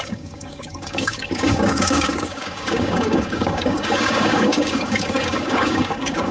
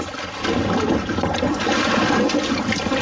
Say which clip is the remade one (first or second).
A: first